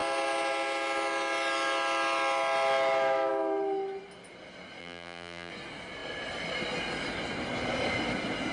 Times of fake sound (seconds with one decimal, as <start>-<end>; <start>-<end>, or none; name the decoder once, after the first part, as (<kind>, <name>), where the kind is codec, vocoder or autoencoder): 4.8-5.5 (vocoder, BigVGAN v2)